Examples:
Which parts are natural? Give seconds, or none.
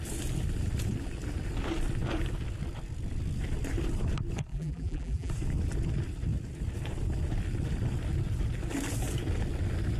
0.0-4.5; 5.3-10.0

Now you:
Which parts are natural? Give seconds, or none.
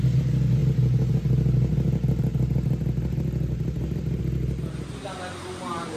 0.0-6.0